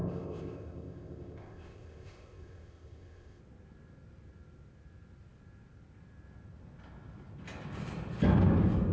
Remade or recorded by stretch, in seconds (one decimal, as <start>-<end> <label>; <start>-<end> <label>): 0.0-3.4 remade; 3.4-8.9 recorded